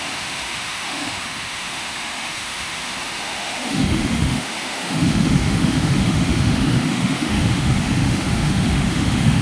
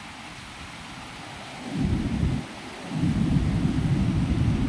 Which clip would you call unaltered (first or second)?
second